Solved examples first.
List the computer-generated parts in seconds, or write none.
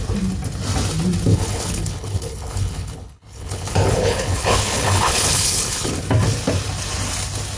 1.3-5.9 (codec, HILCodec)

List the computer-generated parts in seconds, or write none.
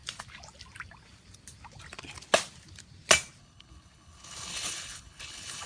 3.4-5.7 (codec, HILCodec)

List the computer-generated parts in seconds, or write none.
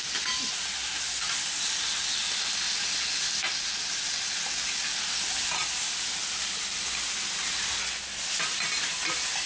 none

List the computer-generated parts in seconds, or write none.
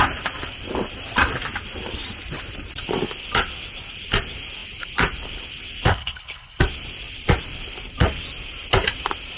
5.9-6.6 (codec, HILCodec)